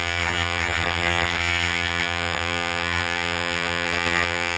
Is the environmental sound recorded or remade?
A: remade